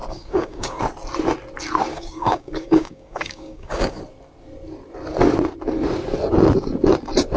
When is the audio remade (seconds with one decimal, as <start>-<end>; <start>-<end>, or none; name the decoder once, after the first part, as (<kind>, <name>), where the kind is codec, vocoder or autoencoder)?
0.0-0.8 (codec, DAC); 1.9-4.0